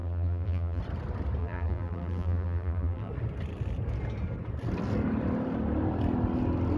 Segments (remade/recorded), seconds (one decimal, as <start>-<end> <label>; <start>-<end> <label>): 0.0-0.8 remade; 0.8-1.4 recorded; 1.4-3.1 remade; 3.1-6.8 recorded